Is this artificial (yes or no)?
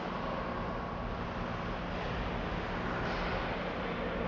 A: no